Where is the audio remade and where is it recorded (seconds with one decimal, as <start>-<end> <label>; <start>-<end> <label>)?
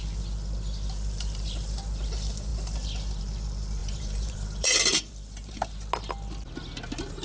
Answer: 0.0-3.8 recorded; 3.8-5.7 remade; 5.7-7.2 recorded